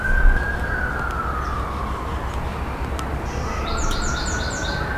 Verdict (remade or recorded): recorded